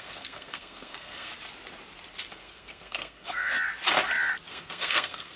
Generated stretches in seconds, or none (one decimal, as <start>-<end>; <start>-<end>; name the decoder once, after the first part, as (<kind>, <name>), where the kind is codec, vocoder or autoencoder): 0.0-1.3 (codec, SNAC); 2.3-3.5; 4.5-5.4